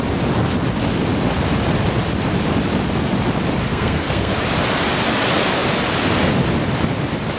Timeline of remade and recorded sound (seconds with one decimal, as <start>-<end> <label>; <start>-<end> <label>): 0.0-3.7 recorded; 3.7-4.3 remade; 4.3-7.4 recorded